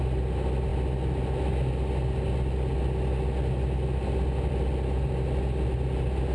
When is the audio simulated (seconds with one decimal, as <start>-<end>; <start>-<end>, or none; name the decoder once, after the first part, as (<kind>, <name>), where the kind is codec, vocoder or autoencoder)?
none